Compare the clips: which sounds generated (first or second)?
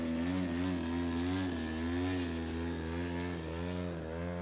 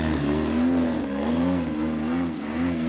second